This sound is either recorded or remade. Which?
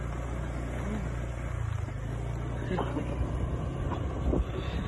recorded